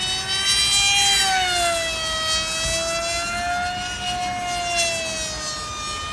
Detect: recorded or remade recorded